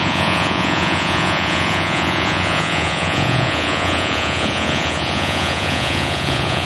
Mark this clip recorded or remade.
remade